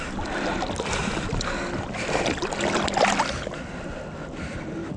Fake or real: real